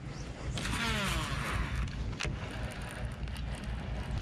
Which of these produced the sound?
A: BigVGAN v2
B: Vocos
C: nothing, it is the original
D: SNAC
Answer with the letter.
C